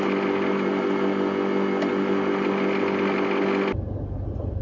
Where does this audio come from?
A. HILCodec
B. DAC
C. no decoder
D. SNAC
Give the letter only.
C